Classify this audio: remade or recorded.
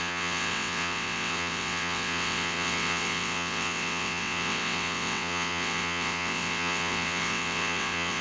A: remade